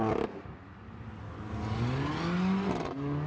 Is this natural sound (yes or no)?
yes